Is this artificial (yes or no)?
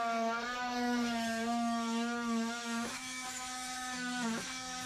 yes